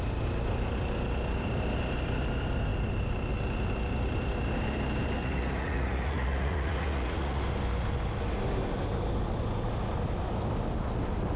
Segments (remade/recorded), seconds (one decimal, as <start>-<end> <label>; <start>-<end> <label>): 0.0-5.2 recorded; 5.2-7.4 remade; 7.4-11.4 recorded